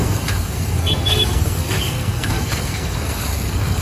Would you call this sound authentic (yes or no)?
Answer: no